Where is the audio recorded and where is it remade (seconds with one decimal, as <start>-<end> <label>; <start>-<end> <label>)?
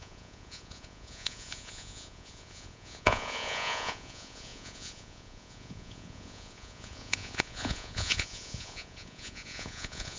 0.0-10.2 remade